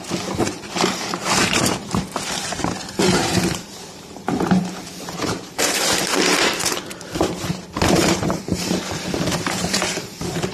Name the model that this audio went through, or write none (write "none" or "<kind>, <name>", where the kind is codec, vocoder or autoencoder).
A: vocoder, BigVGAN v2